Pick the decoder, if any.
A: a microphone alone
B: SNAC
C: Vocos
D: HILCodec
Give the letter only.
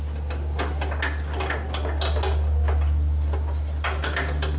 A